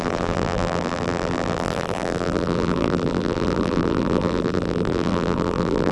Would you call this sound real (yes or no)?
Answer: no